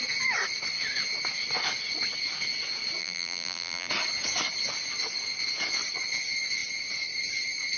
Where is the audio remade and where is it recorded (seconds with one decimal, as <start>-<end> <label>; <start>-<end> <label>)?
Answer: 0.0-3.0 recorded; 3.0-3.9 remade; 3.9-7.8 recorded

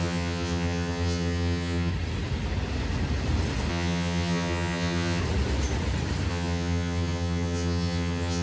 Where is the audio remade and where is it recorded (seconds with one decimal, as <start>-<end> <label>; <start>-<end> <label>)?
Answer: 0.0-1.9 remade; 1.9-3.7 recorded; 3.7-5.2 remade; 5.2-6.3 recorded; 6.3-8.4 remade

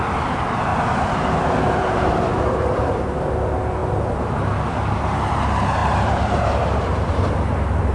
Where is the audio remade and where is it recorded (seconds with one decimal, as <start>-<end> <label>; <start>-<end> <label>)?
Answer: 0.0-0.7 recorded; 0.7-3.3 remade; 3.3-5.8 recorded; 5.8-7.2 remade; 7.2-7.9 recorded

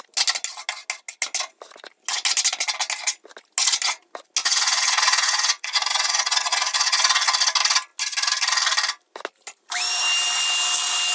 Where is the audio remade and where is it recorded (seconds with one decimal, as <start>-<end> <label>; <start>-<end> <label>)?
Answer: 0.0-4.4 recorded; 4.4-7.0 remade; 7.0-11.1 recorded

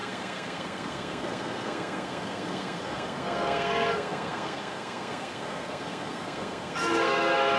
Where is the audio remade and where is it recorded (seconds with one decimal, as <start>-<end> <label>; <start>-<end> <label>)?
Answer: 0.0-7.6 remade

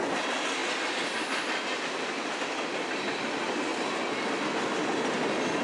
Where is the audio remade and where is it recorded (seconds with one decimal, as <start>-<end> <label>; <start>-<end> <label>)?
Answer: 0.0-5.6 recorded

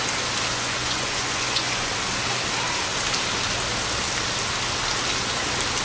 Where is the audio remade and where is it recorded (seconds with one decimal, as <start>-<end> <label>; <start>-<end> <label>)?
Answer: 0.0-0.5 recorded; 0.5-1.9 remade; 1.9-5.8 recorded

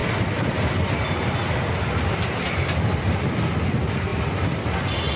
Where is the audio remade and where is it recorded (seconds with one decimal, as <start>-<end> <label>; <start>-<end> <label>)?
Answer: 0.0-5.2 recorded